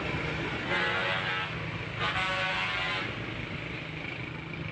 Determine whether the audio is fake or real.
real